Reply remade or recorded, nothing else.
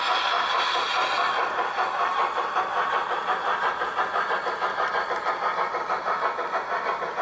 recorded